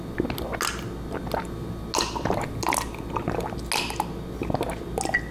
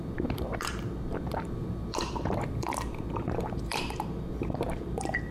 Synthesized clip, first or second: second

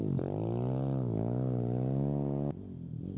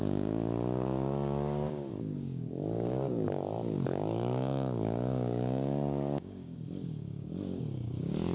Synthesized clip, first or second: second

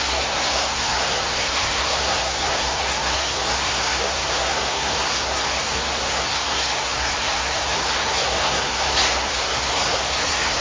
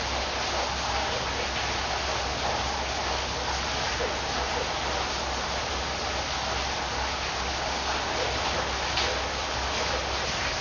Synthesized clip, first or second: first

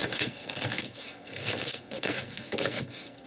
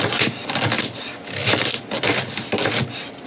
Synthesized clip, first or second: first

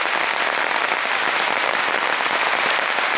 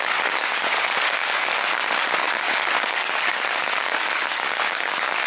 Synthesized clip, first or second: second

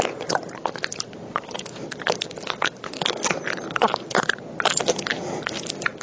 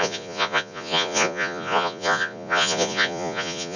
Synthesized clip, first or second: second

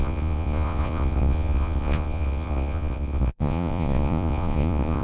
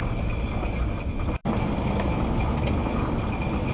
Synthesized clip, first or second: first